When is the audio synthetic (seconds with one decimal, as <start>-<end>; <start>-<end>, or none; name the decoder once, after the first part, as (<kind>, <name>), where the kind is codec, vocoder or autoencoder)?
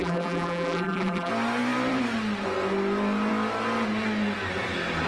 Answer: 0.0-1.3 (vocoder, BigVGAN v2)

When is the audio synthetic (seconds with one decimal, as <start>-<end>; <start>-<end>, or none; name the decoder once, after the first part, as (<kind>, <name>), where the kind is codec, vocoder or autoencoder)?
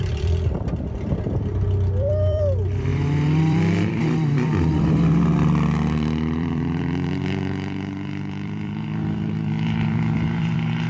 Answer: 0.0-2.9 (vocoder, BigVGAN v2); 3.4-10.9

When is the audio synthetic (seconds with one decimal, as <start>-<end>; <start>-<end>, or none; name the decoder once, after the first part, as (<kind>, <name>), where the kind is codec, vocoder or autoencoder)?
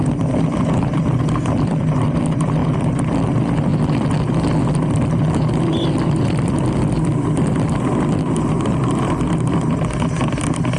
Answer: 0.0-2.6 (vocoder, BigVGAN v2); 3.2-3.7; 5.5-7.1; 7.8-10.8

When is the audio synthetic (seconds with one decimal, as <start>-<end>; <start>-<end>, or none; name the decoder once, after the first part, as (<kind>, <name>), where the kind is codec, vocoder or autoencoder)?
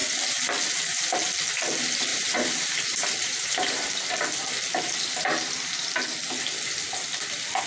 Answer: 2.1-3.9 (vocoder, BigVGAN v2)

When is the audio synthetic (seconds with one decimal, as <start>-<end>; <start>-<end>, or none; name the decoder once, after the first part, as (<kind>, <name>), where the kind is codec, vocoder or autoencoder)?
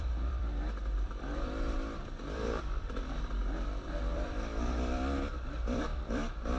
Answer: 0.0-6.6 (vocoder, BigVGAN v2)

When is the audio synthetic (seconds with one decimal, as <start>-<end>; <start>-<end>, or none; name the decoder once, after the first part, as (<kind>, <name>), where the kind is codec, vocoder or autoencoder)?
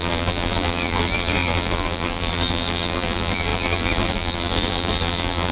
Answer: 0.0-5.5 (vocoder, BigVGAN v2)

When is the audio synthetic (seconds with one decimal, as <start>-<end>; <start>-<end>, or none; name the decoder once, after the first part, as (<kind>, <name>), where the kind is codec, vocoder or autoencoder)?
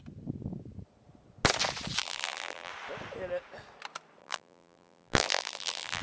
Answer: 2.0-2.7 (vocoder, BigVGAN v2); 4.2-6.0